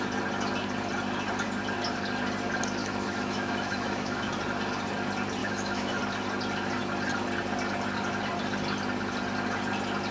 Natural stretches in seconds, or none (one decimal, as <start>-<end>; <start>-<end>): 0.0-2.8; 4.3-5.4; 6.0-10.1